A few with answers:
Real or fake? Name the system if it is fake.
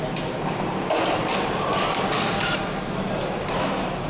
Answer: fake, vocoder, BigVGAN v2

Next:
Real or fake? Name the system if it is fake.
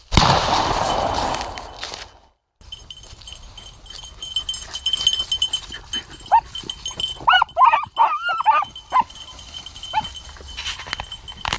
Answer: real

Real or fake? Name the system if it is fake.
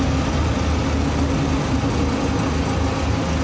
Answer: real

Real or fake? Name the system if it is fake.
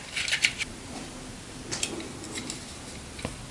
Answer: real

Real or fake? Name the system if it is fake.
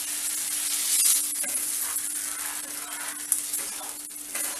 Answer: real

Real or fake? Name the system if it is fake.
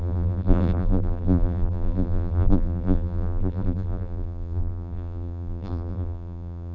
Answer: fake, vocoder, BigVGAN v2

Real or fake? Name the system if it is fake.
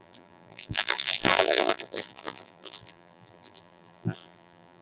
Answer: fake, vocoder, BigVGAN v2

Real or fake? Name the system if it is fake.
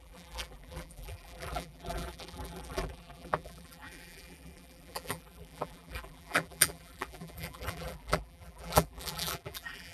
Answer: fake, vocoder, BigVGAN v2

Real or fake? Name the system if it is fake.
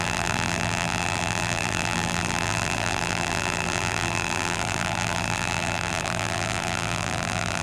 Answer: fake, vocoder, BigVGAN v2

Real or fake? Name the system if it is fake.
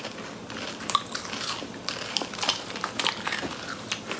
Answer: fake, vocoder, BigVGAN v2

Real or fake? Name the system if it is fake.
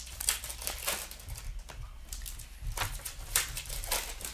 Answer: fake, vocoder, BigVGAN v2